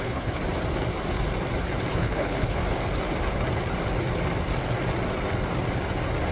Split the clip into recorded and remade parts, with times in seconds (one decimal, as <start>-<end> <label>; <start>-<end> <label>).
0.0-0.4 remade; 0.4-1.9 recorded; 1.9-2.6 remade; 2.6-6.3 recorded